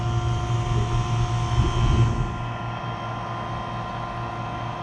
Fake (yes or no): no